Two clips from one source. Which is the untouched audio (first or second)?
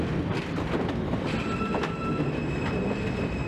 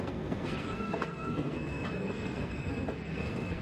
first